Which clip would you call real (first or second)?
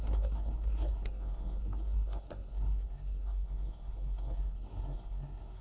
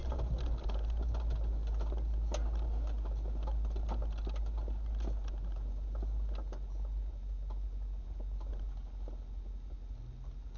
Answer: second